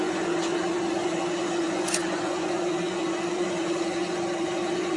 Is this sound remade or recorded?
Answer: remade